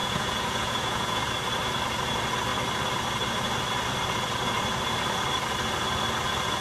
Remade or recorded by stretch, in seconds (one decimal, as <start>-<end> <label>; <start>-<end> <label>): 0.0-1.2 remade; 1.2-6.6 recorded